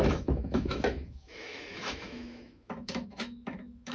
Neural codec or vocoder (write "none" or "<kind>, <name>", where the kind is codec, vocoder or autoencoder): autoencoder, DAC-VAE